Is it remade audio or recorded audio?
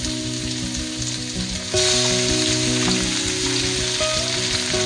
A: recorded